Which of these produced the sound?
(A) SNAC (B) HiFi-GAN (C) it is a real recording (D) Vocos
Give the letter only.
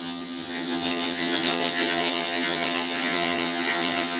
B